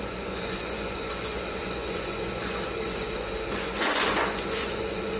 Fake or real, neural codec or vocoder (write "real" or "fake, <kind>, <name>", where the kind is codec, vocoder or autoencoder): fake, vocoder, Vocos